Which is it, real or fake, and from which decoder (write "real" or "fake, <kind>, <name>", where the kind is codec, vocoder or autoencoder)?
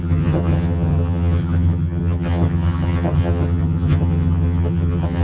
fake, vocoder, HiFi-GAN